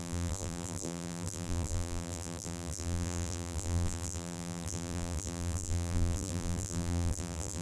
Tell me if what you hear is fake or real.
fake